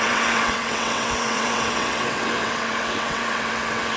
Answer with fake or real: fake